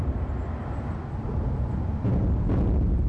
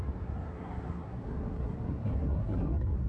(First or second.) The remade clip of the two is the second